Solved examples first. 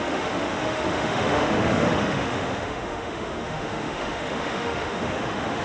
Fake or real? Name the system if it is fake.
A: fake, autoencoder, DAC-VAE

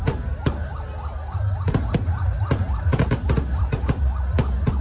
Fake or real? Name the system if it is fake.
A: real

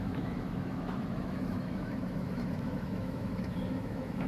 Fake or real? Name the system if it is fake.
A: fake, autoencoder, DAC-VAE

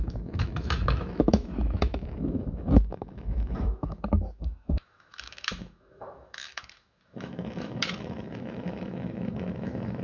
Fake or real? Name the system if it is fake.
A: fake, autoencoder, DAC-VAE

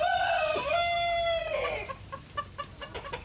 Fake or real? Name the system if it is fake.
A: real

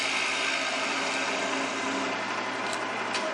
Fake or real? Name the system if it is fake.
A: real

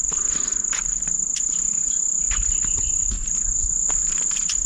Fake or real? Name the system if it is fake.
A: real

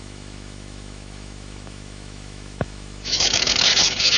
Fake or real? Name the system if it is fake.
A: fake, autoencoder, DAC-VAE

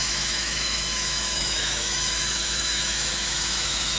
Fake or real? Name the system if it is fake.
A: fake, autoencoder, DAC-VAE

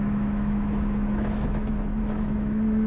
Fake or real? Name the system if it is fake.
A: fake, autoencoder, DAC-VAE